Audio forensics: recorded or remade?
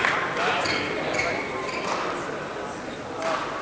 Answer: recorded